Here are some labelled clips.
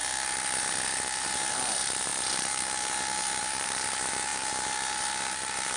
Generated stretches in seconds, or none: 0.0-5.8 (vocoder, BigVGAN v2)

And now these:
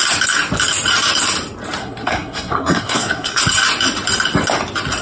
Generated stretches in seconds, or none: 1.8-3.4 (codec, SNAC)

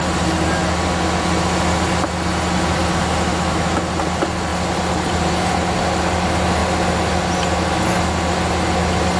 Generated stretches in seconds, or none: 3.3-3.8 (autoencoder, DAC-VAE)

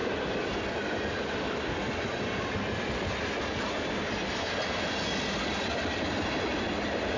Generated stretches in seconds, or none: none

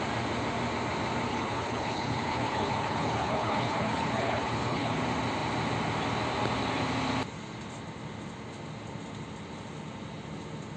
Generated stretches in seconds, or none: 1.3-5.0 (codec, HILCodec)

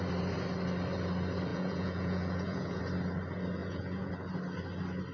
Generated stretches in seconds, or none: 1.5-2.8 (vocoder, Vocos); 3.6-4.1

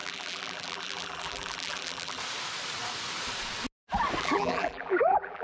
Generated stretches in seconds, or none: 0.0-2.2 (vocoder, BigVGAN v2); 4.2-5.4